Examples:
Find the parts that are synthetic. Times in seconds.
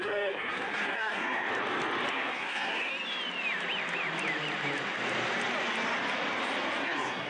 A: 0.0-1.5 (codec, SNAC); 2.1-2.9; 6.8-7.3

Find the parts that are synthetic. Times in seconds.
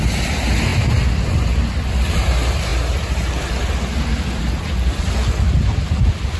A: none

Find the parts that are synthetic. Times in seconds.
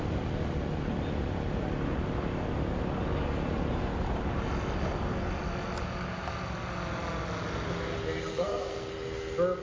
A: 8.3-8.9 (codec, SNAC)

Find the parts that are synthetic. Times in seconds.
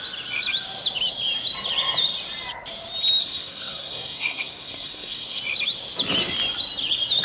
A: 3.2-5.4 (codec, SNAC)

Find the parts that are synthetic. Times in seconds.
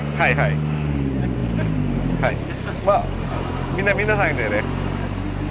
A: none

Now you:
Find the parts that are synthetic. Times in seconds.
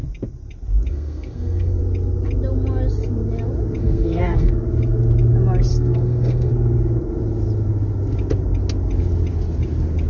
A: 0.9-1.8 (codec, SNAC); 3.8-4.5; 5.7-6.5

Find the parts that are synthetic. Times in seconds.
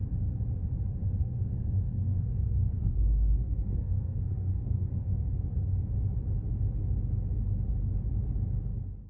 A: 1.2-5.2 (codec, SNAC)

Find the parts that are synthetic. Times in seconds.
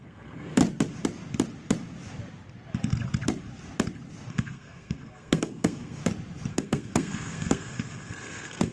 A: 0.0-0.6 (codec, SNAC); 4.3-6.0; 6.5-8.7